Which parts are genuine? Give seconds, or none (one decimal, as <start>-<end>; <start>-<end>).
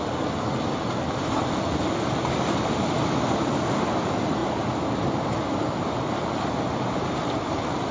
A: 0.0-7.9